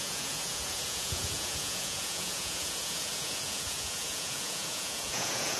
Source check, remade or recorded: remade